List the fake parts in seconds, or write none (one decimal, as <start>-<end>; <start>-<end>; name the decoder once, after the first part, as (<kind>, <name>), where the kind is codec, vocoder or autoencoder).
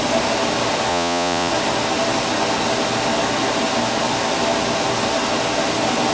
0.9-1.5 (vocoder, Vocos)